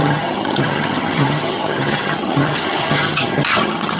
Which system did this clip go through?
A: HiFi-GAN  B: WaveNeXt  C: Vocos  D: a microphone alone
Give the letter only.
A